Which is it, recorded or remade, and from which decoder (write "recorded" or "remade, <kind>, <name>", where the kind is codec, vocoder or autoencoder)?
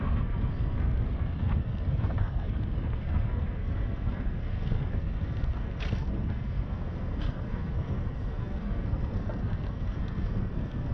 remade, codec, SNAC